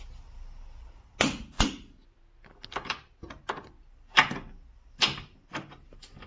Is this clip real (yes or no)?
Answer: yes